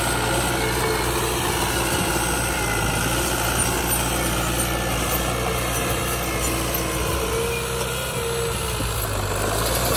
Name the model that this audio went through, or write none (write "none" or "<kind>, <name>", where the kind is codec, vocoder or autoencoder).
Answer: none